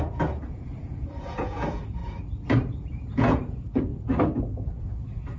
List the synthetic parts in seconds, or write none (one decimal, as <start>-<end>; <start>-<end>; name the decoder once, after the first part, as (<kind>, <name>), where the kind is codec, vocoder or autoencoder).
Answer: 0.0-2.0 (vocoder, Vocos); 2.9-3.9; 4.5-5.4